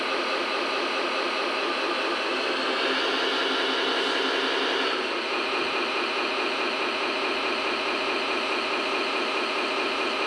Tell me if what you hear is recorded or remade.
recorded